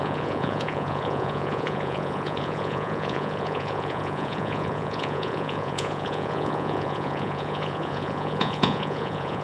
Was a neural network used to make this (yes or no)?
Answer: yes